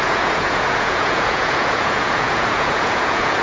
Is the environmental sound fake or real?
fake